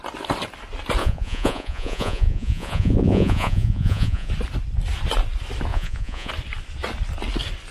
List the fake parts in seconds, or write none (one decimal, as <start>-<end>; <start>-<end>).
1.0-4.3; 5.7-6.3